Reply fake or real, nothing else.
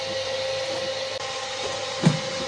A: real